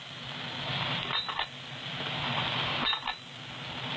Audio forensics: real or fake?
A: real